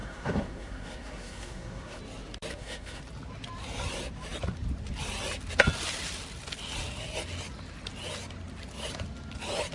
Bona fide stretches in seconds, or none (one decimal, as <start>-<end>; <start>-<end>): 2.0-2.5; 3.0-9.7